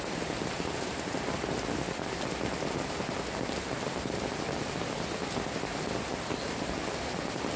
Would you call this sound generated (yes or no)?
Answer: no